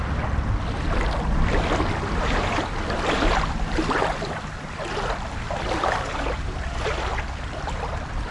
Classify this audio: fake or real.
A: real